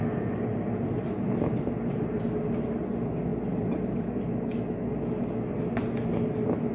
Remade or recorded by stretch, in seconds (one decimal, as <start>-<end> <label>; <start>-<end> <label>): 0.0-3.3 recorded; 3.3-4.5 remade; 4.5-6.7 recorded